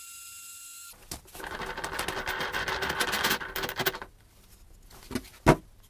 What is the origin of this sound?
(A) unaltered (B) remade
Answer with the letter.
A